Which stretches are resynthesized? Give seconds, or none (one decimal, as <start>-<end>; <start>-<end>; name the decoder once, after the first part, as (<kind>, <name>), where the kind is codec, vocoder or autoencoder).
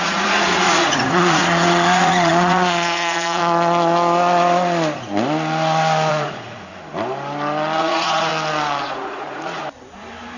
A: 0.0-3.4 (vocoder, Vocos); 6.1-6.7; 7.8-8.3; 8.8-9.6